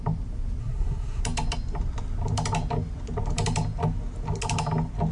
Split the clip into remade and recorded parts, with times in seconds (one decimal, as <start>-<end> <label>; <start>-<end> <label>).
0.0-0.6 recorded; 0.6-1.2 remade; 1.2-5.1 recorded